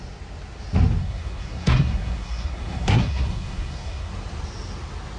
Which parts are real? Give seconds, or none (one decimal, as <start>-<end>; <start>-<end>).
0.0-1.0; 4.1-5.2